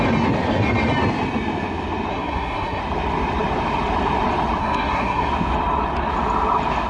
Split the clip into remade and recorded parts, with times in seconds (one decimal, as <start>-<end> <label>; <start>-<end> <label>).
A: 0.0-2.1 recorded; 2.1-2.8 remade; 2.8-4.6 recorded; 4.6-5.3 remade; 5.3-6.9 recorded